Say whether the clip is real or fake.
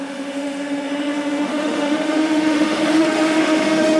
fake